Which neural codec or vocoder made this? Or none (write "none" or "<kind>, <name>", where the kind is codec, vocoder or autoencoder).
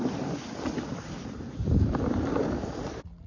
none